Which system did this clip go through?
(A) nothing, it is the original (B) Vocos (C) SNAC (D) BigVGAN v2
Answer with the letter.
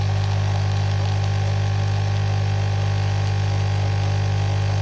A